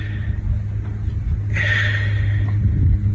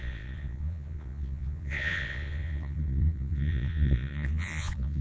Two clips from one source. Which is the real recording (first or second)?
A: first